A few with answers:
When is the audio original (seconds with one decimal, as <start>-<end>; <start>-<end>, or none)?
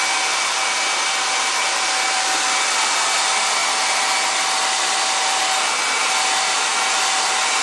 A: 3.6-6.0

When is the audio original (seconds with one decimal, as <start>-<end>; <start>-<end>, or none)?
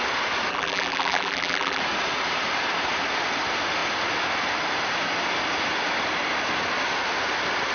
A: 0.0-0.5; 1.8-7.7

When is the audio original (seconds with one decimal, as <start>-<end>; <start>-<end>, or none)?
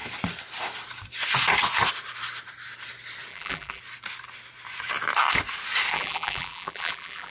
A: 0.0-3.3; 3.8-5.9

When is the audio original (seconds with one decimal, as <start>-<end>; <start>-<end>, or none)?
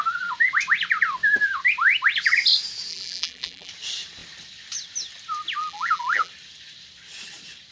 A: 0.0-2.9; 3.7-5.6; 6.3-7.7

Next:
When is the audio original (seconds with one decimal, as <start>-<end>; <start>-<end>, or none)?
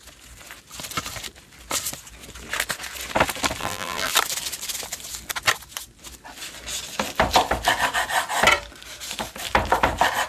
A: 0.0-3.6; 4.1-10.3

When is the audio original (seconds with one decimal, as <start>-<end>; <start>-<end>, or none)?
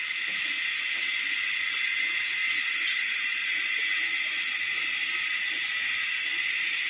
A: 0.0-1.9; 5.9-6.9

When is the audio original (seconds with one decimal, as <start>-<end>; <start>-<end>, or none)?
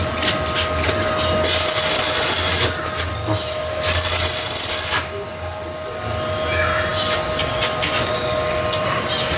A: 0.0-5.3; 6.1-9.4